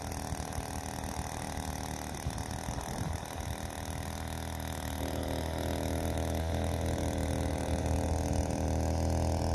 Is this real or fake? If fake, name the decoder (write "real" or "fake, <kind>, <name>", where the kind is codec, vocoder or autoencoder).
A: real